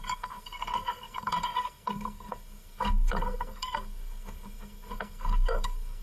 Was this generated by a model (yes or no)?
yes